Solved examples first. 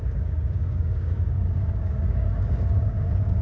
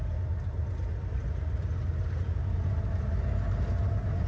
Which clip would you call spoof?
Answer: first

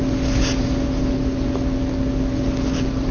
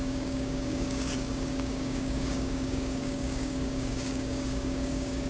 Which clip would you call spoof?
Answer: second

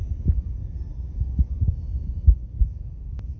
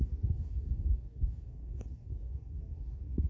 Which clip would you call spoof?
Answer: second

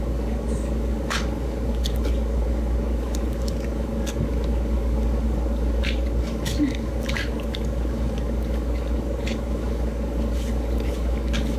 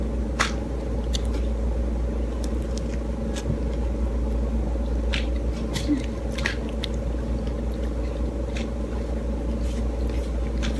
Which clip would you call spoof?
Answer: first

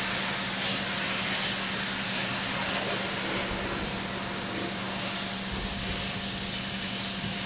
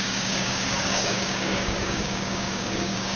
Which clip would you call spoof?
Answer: second